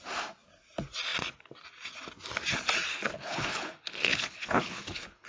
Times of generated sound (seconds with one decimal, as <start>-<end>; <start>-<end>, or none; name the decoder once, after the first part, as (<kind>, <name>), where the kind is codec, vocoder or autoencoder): 2.9-5.3 (codec, HILCodec)